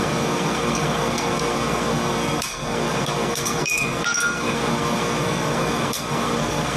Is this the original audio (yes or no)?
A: no